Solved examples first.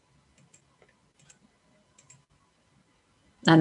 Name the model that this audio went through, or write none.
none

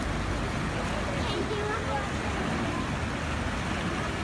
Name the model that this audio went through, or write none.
none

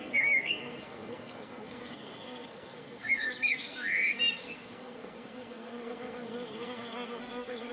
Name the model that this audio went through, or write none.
codec, SNAC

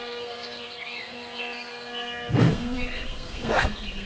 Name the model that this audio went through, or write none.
codec, SNAC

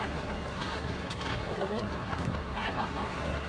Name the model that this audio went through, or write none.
codec, SNAC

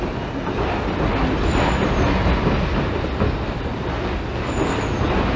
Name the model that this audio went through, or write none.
none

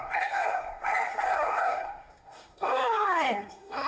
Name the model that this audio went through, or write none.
codec, SNAC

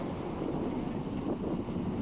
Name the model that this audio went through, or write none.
none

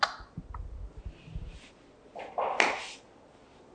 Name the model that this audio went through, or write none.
none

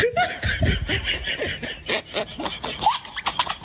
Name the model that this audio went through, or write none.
none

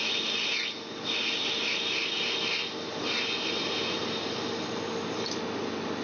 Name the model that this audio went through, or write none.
none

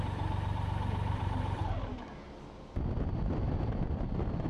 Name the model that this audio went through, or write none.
none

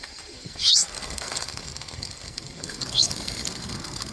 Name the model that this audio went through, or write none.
codec, SNAC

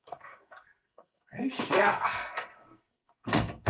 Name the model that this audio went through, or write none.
codec, SNAC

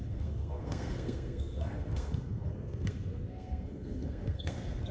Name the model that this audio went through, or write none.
codec, SNAC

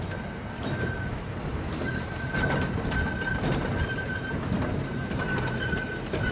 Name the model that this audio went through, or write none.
none